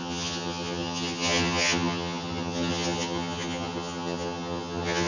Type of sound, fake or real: fake